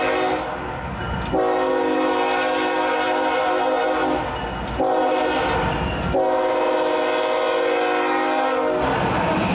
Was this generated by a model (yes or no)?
no